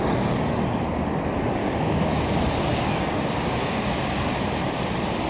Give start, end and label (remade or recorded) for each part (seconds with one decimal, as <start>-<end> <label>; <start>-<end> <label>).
0.0-1.6 recorded; 1.6-2.2 remade; 2.2-2.7 recorded; 2.7-4.3 remade; 4.3-5.3 recorded